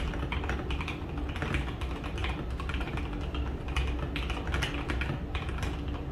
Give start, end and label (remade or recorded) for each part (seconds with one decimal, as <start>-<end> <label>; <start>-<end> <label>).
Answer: 0.0-6.1 recorded